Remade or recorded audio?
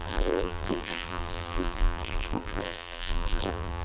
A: remade